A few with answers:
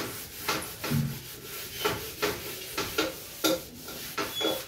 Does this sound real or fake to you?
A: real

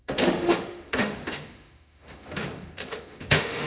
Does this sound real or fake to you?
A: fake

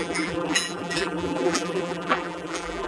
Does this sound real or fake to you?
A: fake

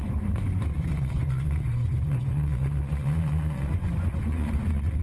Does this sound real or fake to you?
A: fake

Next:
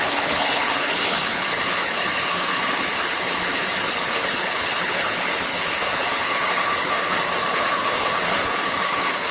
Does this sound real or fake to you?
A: fake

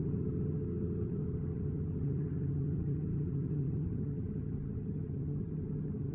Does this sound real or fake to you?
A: fake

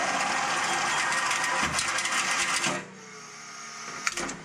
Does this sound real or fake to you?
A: real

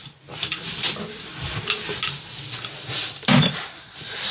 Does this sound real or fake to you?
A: real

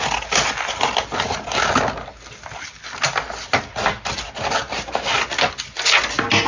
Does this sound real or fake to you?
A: real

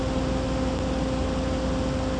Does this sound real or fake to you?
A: real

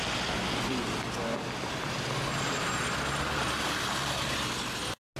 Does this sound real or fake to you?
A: real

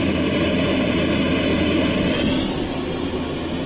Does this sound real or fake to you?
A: real